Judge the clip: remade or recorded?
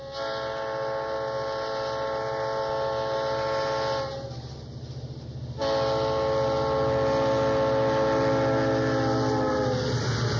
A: recorded